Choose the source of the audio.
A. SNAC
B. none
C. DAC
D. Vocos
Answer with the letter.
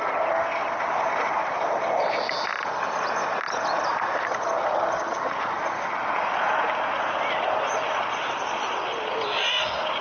B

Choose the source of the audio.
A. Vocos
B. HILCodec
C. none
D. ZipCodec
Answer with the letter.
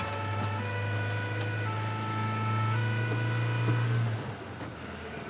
C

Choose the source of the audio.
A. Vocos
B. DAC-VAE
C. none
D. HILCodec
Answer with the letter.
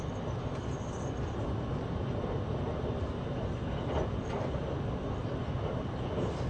C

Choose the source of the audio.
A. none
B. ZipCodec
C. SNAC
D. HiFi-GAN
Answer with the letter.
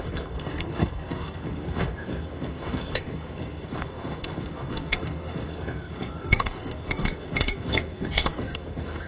C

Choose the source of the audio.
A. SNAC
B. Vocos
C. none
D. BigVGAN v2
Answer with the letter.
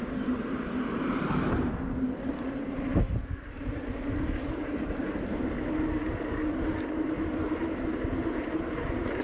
D